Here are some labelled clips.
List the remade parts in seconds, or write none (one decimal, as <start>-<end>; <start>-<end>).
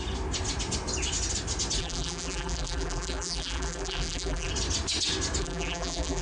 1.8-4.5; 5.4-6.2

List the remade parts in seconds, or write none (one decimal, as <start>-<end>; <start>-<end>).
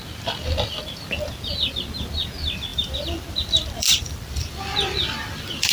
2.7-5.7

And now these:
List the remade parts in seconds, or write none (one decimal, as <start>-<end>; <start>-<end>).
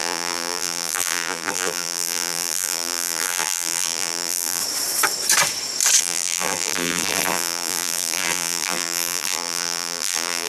0.0-4.6; 6.0-10.5